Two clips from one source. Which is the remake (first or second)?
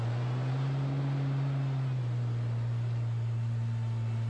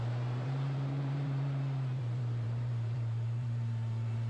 second